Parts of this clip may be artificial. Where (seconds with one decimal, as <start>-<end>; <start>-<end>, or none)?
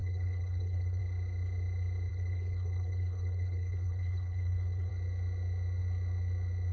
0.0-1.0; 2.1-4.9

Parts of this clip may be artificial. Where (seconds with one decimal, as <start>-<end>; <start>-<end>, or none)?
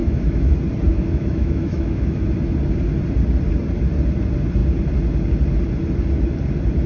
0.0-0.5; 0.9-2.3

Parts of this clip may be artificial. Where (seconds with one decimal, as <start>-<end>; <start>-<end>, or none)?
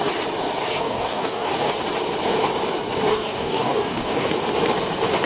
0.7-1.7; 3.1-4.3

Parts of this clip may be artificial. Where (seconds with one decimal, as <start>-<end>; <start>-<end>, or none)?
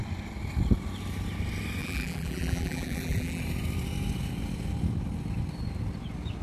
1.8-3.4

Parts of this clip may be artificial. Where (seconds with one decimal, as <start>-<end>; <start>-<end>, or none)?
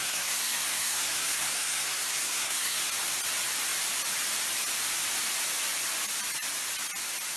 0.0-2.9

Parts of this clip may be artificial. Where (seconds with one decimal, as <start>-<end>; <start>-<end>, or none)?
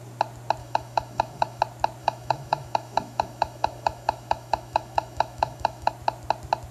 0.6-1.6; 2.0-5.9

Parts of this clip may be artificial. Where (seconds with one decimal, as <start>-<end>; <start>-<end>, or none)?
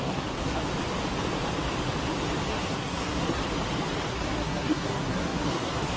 0.0-0.6; 2.5-3.4; 4.1-6.0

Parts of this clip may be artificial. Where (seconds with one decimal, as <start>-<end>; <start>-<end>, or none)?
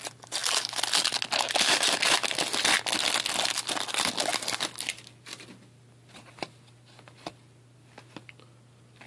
none